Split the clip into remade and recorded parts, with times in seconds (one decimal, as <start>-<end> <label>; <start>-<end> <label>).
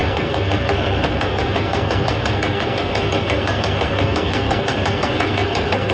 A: 0.0-5.9 remade